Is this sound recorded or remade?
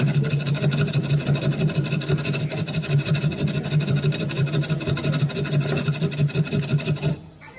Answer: recorded